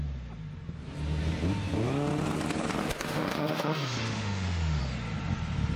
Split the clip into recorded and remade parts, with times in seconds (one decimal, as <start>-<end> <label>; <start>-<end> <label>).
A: 0.0-2.8 recorded; 2.8-4.8 remade; 4.8-5.8 recorded